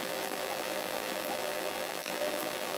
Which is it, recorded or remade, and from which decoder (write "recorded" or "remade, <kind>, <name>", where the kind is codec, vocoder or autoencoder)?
remade, vocoder, BigVGAN v2